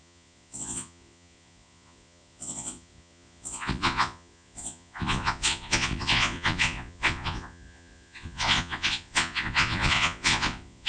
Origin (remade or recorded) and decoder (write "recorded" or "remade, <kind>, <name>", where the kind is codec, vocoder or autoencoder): remade, vocoder, Vocos